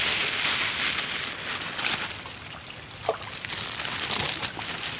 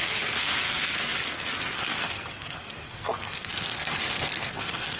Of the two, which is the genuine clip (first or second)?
first